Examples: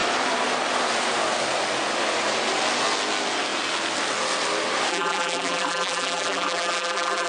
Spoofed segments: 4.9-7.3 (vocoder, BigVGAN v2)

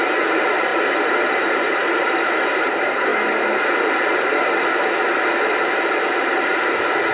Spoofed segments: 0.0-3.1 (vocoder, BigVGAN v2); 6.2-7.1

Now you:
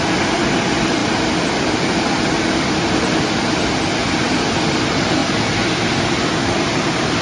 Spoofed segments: none

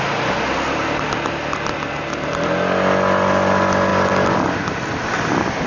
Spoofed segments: none